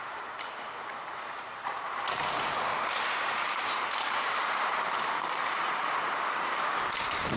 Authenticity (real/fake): fake